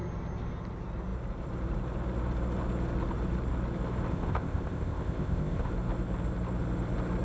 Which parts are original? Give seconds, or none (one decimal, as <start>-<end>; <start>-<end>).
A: 0.0-4.1; 5.7-7.2